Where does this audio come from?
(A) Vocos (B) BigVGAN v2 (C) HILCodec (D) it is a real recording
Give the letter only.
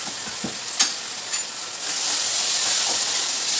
D